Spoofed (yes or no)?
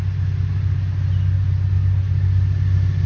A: no